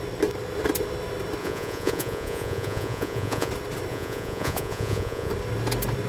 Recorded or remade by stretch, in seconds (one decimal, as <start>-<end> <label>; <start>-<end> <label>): 0.0-1.4 recorded; 1.4-3.5 remade; 3.5-3.9 recorded; 3.9-5.3 remade; 5.3-6.1 recorded